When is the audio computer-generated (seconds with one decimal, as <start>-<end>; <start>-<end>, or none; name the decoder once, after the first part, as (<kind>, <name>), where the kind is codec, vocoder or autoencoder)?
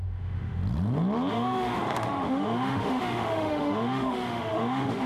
0.0-0.6 (autoencoder, DAC-VAE); 1.3-5.1